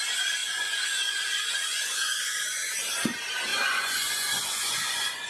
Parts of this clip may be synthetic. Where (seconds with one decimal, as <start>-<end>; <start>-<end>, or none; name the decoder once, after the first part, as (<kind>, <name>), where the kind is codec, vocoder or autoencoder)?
0.4-2.7 (vocoder, Vocos); 3.5-5.3